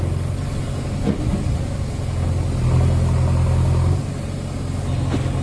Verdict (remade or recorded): recorded